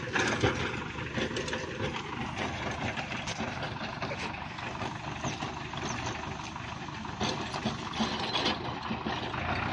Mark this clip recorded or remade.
recorded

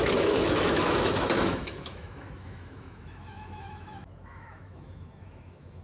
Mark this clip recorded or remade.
remade